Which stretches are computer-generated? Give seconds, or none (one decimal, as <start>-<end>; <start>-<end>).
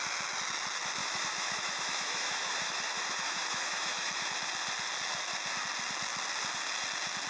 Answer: 1.0-4.3